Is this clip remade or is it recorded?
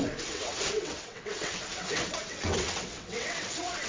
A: remade